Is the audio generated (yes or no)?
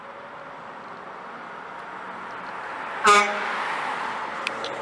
no